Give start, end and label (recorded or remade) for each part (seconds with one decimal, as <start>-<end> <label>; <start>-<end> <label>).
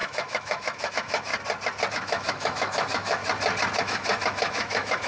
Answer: 0.0-1.3 remade; 1.3-1.9 recorded; 1.9-3.2 remade; 3.2-3.8 recorded; 3.8-5.1 remade